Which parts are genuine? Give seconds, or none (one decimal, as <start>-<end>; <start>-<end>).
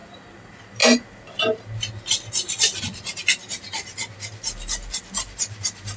0.0-6.0